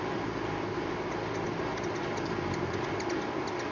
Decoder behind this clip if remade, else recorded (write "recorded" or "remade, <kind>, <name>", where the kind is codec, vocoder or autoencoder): recorded